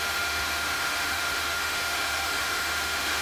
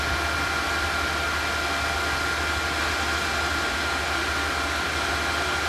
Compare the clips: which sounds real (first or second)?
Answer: second